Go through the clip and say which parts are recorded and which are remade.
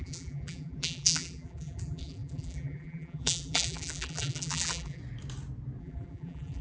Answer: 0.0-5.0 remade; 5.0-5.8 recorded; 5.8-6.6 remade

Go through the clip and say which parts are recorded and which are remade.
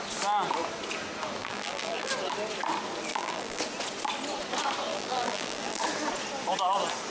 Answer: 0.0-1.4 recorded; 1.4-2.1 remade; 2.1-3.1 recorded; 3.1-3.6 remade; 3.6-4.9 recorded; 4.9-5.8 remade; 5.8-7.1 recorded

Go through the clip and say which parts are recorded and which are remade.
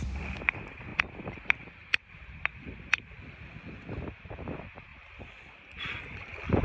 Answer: 0.0-6.6 remade